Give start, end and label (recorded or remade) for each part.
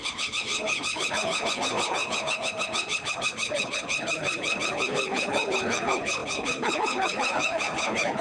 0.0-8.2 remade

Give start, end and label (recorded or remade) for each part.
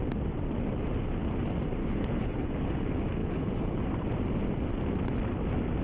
0.0-1.8 recorded; 1.8-2.5 remade; 2.5-3.2 recorded; 3.2-3.8 remade; 3.8-5.8 recorded